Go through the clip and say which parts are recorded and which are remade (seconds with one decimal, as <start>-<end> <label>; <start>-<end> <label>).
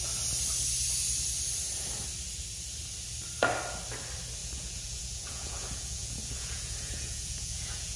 0.0-4.4 recorded; 4.4-8.0 remade